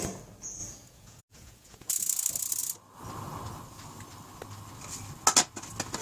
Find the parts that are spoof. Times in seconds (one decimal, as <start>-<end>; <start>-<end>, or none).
0.6-1.9